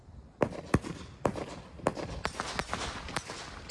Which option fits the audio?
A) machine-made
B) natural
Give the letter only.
B